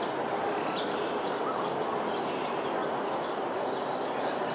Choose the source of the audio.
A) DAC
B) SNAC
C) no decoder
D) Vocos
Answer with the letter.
C